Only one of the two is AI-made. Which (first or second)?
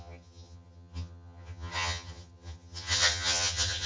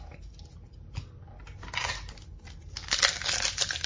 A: first